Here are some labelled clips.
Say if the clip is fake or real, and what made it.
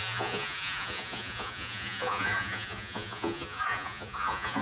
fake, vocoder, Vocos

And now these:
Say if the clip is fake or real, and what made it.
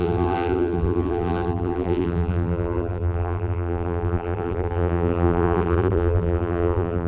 fake, vocoder, BigVGAN v2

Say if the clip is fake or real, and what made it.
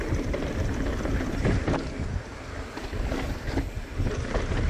real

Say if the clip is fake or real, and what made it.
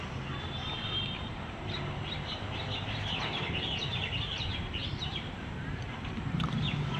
fake, vocoder, BigVGAN v2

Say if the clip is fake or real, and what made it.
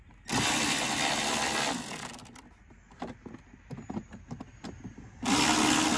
real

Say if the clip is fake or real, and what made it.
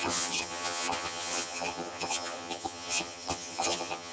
fake, vocoder, HiFi-GAN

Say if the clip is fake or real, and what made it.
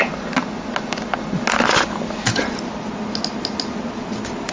real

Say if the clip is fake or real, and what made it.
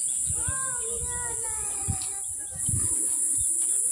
real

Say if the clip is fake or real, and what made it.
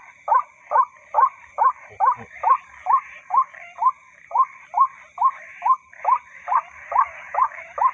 real